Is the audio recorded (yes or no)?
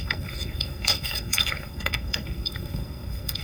no